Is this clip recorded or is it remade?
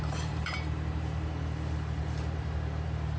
remade